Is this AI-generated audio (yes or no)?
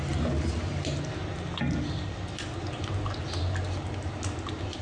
no